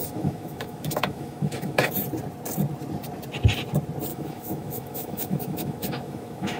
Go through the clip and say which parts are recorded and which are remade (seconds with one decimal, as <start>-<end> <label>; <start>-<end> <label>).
0.0-1.9 remade; 1.9-4.1 recorded; 4.1-6.6 remade